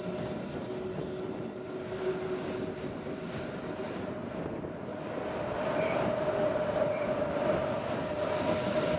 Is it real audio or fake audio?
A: real